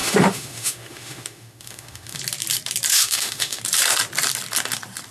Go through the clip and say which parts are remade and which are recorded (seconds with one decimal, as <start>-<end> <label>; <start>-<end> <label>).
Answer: 0.0-2.2 remade; 2.2-2.9 recorded; 2.9-3.6 remade; 3.6-5.1 recorded